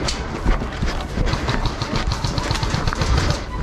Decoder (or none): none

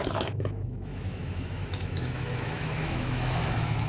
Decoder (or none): autoencoder, DAC-VAE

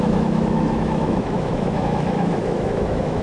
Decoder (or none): autoencoder, DAC-VAE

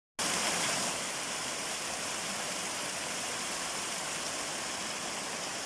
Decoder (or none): none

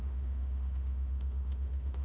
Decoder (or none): autoencoder, DAC-VAE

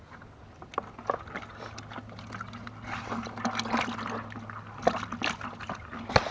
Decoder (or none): none